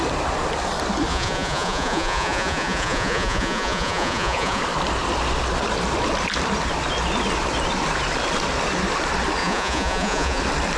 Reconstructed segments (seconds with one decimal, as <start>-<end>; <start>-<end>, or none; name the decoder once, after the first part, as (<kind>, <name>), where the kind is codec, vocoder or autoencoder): 1.1-4.6 (vocoder, Vocos); 9.4-10.4